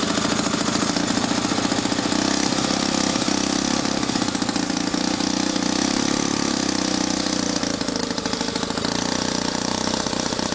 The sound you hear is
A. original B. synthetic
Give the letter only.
A